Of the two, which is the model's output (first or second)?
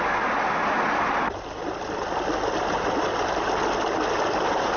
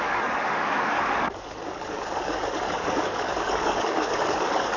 second